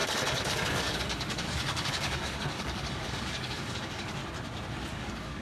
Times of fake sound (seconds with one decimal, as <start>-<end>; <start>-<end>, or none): 0.0-4.2; 4.9-5.4